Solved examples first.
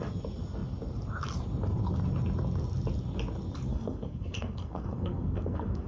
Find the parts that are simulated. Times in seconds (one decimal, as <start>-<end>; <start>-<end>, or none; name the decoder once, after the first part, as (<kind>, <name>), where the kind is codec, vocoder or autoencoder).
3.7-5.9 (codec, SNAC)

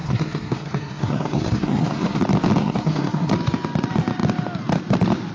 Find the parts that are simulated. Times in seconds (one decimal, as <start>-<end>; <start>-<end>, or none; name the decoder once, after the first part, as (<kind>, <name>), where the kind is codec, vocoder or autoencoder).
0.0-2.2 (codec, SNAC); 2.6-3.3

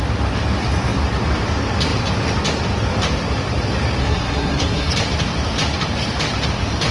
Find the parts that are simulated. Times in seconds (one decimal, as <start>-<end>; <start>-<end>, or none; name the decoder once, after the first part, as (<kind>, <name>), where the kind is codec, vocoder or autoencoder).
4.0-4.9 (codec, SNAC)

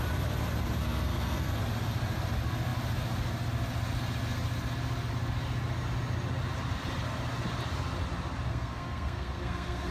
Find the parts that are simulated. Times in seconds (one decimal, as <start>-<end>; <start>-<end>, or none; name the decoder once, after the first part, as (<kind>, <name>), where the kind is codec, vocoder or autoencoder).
0.8-1.6 (codec, SNAC); 8.5-9.9

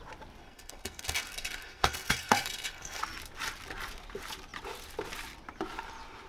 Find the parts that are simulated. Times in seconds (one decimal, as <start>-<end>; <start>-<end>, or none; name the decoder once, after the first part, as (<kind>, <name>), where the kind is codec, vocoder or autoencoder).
0.4-3.0 (codec, SNAC)

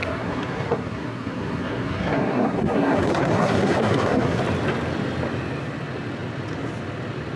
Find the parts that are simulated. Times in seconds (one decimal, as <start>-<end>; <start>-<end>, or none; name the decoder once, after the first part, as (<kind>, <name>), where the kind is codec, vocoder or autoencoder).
0.0-4.4 (codec, SNAC)

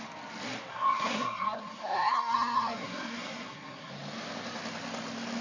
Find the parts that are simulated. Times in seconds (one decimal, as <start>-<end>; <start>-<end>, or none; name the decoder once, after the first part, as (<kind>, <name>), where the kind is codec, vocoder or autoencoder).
0.7-3.9 (codec, SNAC)

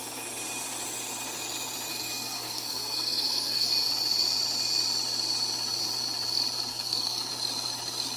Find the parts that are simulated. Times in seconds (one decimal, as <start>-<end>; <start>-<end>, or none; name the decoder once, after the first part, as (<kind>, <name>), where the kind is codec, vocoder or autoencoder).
1.9-3.7 (codec, SNAC); 6.7-7.3